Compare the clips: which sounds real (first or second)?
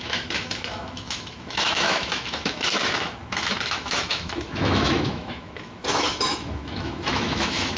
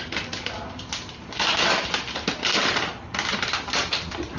second